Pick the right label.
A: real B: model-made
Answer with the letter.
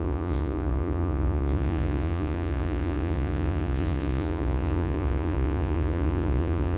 B